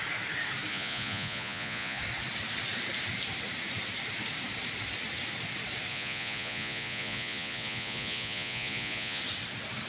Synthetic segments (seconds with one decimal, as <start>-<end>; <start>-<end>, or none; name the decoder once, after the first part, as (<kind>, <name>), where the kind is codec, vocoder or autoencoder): 0.7-2.0 (vocoder, Vocos); 5.9-9.2